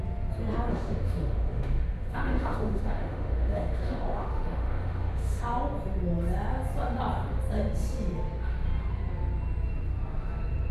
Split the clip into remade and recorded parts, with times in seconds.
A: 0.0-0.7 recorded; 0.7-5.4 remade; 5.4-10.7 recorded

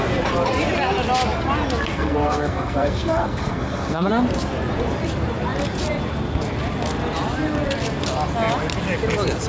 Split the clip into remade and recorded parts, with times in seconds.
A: 0.0-1.9 recorded; 1.9-4.1 remade; 4.1-9.5 recorded

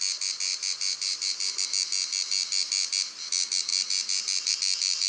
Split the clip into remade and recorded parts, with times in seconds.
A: 0.0-5.1 recorded

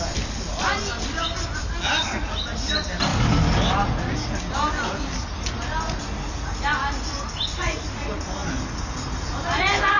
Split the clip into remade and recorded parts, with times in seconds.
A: 0.0-10.0 recorded

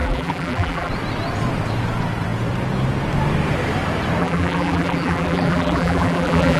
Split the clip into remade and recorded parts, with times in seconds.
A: 0.0-0.9 remade; 0.9-4.2 recorded; 4.2-6.6 remade

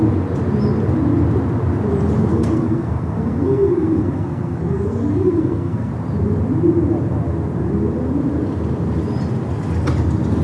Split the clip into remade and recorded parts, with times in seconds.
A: 0.0-2.3 recorded; 2.3-5.9 remade; 5.9-10.4 recorded

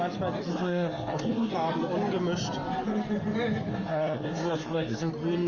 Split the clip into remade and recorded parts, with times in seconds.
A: 0.0-0.5 recorded; 0.5-1.5 remade; 1.5-3.7 recorded; 3.7-5.1 remade; 5.1-5.5 recorded

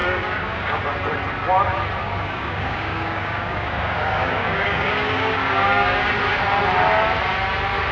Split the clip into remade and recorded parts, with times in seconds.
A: 0.0-0.8 remade; 0.8-2.0 recorded; 2.0-6.1 remade; 6.1-7.9 recorded